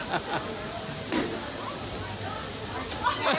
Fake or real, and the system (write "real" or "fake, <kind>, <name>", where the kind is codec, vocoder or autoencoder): real